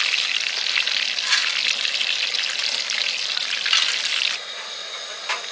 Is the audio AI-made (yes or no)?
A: no